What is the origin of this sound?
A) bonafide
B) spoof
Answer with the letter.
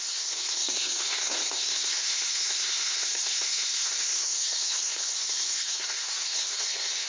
B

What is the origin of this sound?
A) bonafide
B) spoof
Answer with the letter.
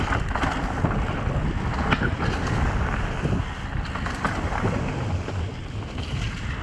A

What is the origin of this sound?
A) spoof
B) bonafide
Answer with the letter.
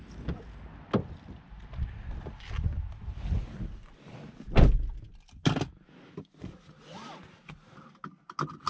B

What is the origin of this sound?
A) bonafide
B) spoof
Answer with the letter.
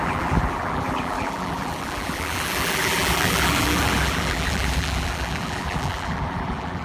B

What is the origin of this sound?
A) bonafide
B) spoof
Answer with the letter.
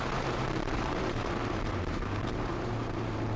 B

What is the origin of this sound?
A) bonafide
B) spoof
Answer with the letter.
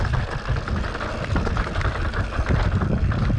A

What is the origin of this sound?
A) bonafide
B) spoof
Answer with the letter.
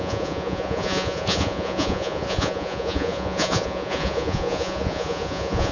B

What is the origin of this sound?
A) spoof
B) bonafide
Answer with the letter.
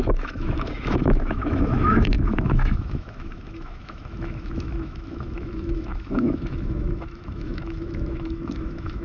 A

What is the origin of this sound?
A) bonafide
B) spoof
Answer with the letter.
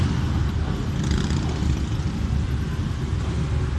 A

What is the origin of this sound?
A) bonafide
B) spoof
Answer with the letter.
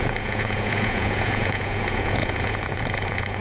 B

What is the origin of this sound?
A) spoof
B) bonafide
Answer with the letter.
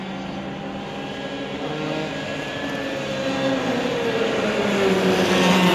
B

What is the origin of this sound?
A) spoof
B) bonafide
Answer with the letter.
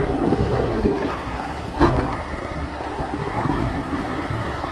A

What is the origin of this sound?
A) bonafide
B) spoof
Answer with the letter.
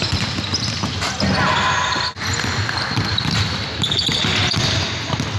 A